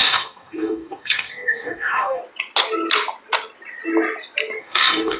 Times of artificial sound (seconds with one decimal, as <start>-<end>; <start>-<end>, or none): 0.0-2.2; 4.6-5.2

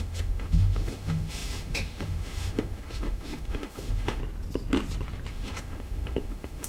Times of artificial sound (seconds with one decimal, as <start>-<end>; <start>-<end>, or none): 0.0-4.2; 5.3-6.7

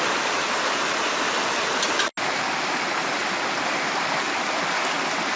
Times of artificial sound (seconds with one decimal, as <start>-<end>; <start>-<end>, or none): none

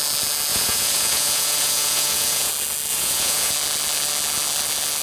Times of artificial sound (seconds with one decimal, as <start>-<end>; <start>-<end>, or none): 0.5-2.5; 2.9-3.5

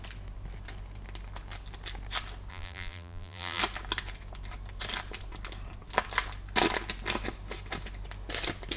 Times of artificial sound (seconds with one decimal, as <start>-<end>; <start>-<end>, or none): 2.5-3.6

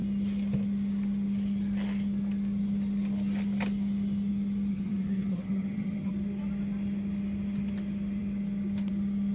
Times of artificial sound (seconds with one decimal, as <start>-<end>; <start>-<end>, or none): 4.7-6.1

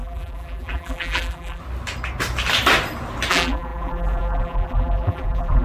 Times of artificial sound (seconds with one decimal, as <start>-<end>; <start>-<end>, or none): 0.0-1.6; 3.3-5.6

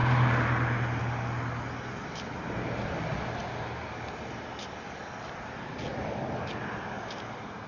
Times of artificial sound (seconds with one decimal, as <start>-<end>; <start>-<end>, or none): none